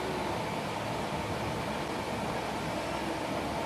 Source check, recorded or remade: recorded